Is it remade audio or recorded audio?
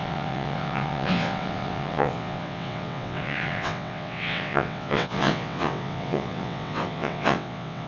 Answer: remade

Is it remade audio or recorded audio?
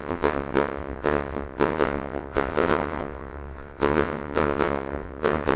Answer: remade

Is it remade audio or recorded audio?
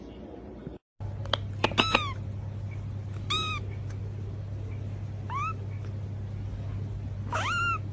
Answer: recorded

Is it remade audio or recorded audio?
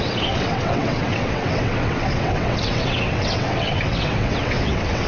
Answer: remade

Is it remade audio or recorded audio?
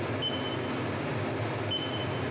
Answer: recorded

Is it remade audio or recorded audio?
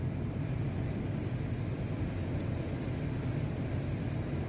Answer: recorded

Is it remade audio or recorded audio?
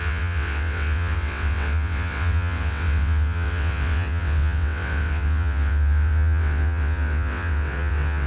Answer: remade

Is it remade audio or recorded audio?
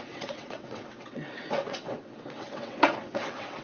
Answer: remade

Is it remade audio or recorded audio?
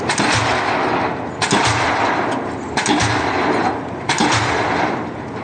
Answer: recorded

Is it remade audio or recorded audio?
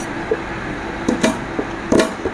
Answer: recorded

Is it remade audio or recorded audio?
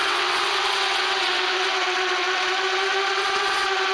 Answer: remade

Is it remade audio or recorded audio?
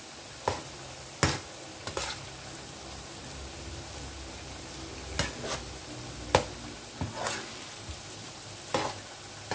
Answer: recorded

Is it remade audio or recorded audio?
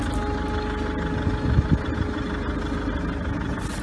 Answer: recorded